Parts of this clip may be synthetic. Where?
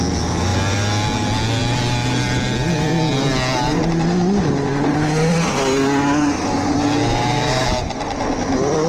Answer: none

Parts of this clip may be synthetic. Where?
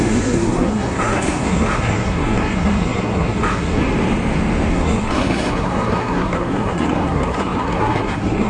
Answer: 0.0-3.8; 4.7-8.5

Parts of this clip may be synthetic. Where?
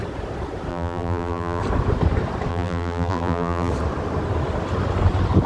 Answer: 0.7-1.6; 2.5-3.7